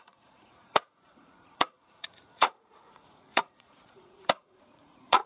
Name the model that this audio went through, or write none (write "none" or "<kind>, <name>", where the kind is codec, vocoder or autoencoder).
vocoder, Vocos